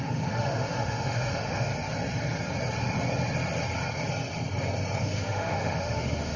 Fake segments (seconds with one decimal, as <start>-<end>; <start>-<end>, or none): 0.0-1.7; 5.0-6.4

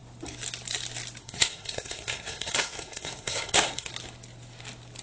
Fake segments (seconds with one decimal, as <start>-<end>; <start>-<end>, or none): 1.2-3.9

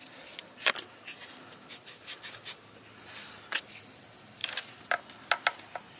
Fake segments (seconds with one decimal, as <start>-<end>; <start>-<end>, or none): 4.4-5.0

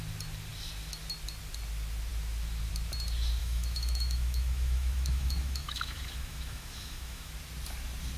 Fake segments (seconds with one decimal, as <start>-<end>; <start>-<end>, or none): 3.4-7.3

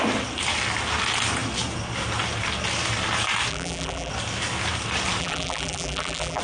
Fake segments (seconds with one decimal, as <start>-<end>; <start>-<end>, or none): 3.5-4.1; 5.2-6.4

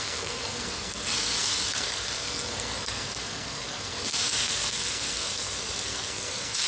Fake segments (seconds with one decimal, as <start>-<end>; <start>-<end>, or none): 0.0-6.7

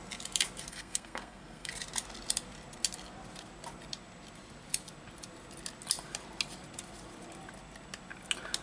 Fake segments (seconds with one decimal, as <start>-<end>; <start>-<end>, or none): 0.7-1.7

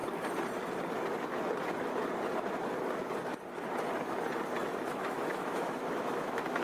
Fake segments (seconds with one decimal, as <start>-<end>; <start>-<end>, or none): 4.6-6.6